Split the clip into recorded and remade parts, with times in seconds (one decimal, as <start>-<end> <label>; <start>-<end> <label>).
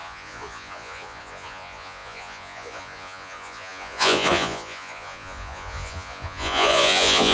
0.0-7.3 remade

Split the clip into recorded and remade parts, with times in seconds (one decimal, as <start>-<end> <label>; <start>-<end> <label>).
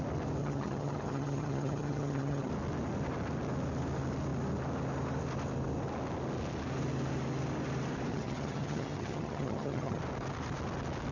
0.0-0.4 recorded; 0.4-2.5 remade; 2.5-8.1 recorded; 8.1-10.0 remade; 10.0-11.1 recorded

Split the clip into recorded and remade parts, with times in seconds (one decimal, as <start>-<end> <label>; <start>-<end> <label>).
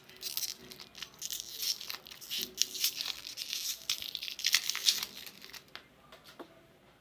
0.0-7.0 recorded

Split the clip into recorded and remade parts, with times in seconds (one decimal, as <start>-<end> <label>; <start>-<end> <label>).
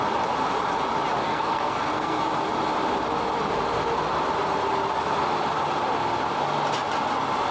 0.0-1.2 recorded; 1.2-2.2 remade; 2.2-7.5 recorded